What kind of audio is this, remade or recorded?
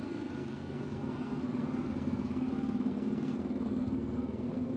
remade